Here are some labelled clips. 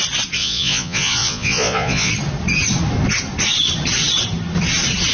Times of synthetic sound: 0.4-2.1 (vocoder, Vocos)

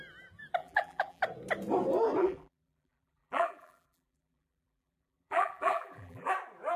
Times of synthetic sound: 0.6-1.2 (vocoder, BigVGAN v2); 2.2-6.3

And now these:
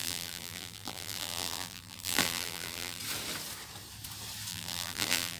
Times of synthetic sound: 0.0-3.0 (vocoder, BigVGAN v2); 4.5-5.4

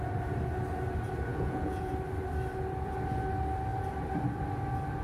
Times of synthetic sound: 1.3-1.9 (vocoder, Vocos)

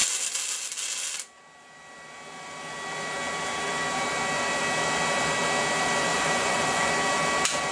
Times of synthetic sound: 6.1-6.9 (vocoder, Vocos)

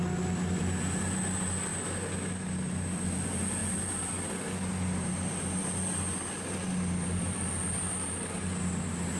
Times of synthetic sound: none